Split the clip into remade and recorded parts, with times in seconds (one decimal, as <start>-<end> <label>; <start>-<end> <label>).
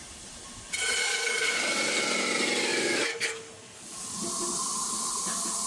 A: 0.0-1.0 recorded; 1.0-2.0 remade; 2.0-2.7 recorded; 2.7-4.2 remade; 4.2-5.7 recorded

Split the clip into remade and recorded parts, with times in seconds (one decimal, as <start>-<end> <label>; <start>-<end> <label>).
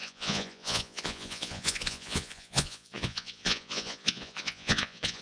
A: 0.0-5.2 remade